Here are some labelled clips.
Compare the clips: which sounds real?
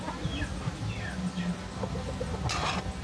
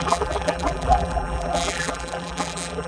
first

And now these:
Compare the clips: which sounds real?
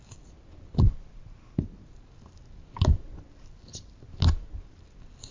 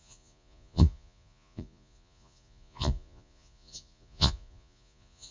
first